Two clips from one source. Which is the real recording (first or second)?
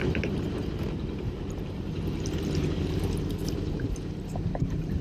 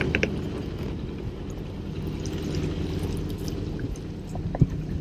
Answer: second